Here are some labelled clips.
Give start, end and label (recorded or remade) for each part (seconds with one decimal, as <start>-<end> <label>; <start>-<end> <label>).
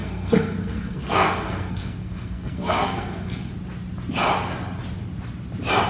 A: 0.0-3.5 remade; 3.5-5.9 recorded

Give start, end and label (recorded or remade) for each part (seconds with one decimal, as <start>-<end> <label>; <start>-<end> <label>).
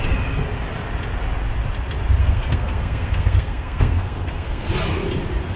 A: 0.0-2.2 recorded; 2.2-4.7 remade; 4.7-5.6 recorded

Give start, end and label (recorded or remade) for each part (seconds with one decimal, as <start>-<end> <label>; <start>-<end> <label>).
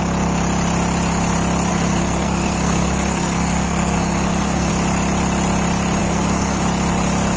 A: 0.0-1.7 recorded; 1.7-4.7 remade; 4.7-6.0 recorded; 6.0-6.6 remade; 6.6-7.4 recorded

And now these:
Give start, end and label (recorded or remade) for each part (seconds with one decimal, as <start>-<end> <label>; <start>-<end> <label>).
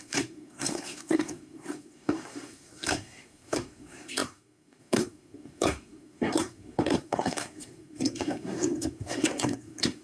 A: 0.0-10.0 remade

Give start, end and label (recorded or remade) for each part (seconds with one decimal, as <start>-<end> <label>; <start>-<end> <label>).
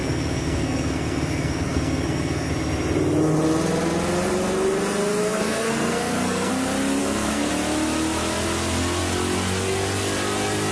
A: 0.0-2.5 remade; 2.5-5.2 recorded; 5.2-6.5 remade; 6.5-7.0 recorded; 7.0-7.5 remade; 7.5-10.7 recorded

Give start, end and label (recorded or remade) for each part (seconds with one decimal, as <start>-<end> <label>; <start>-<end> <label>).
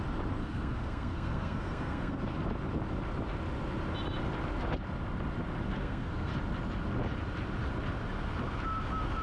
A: 0.0-0.4 recorded; 0.4-2.2 remade; 2.2-5.8 recorded; 5.8-6.3 remade; 6.3-9.2 recorded